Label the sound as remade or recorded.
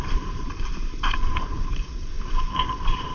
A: remade